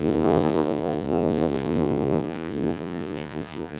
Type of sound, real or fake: fake